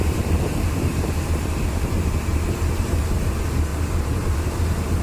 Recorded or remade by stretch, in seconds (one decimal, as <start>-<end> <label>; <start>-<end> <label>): 0.0-2.3 remade; 2.3-2.8 recorded; 2.8-5.0 remade